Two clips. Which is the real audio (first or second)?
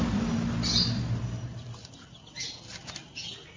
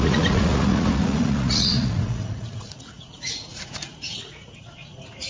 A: first